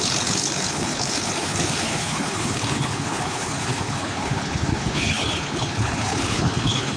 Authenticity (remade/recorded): remade